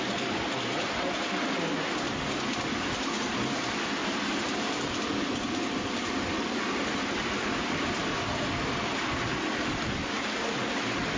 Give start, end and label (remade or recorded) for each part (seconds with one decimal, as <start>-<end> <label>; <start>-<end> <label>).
0.0-11.2 recorded